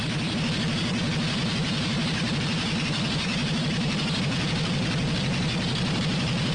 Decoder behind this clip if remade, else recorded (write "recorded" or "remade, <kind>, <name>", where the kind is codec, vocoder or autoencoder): remade, vocoder, BigVGAN v2